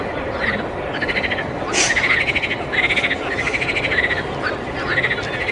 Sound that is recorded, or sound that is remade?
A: recorded